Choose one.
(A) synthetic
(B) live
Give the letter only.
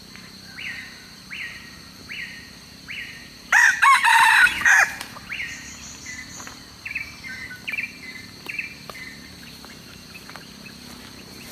A